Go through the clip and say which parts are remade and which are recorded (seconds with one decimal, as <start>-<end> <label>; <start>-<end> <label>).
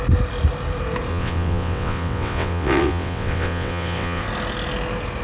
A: 0.0-1.1 recorded; 1.1-4.2 remade; 4.2-5.2 recorded